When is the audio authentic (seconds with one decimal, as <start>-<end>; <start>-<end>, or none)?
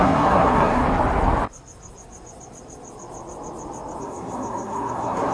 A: 0.8-4.0